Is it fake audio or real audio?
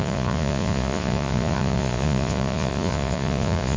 fake